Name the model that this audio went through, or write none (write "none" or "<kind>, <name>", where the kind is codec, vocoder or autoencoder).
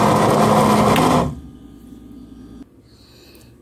none